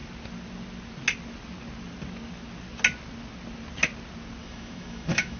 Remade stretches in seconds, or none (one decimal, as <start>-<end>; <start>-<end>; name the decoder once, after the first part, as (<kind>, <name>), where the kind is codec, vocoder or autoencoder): 4.4-5.4 (autoencoder, DAC-VAE)